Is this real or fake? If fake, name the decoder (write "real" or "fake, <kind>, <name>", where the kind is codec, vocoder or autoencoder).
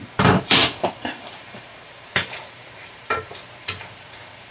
fake, vocoder, BigVGAN v2